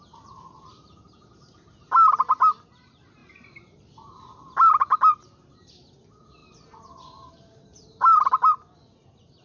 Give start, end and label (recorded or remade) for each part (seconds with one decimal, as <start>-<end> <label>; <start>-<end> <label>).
0.0-6.4 recorded; 6.4-8.3 remade; 8.3-9.4 recorded